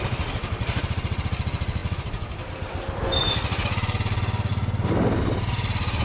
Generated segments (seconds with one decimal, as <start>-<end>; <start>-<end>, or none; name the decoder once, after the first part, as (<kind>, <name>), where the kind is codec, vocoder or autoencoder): none